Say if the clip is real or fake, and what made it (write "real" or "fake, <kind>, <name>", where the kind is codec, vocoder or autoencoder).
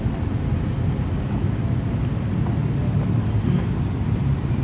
real